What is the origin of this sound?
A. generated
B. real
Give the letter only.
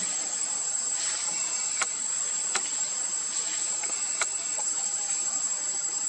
A